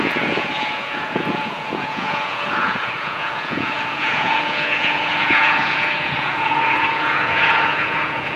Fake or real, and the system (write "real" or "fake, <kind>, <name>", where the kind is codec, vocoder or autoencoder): fake, vocoder, Vocos